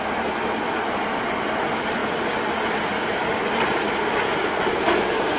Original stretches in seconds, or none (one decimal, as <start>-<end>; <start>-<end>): 0.0-5.4